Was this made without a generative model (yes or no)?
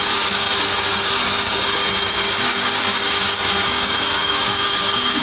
no